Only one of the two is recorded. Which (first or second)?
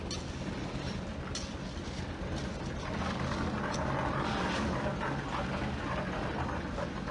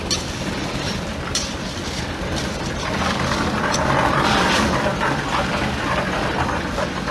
first